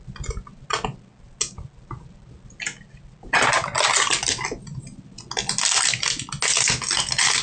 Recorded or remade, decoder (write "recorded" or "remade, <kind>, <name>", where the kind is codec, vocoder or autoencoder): recorded